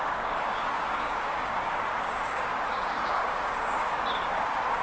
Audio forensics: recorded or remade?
remade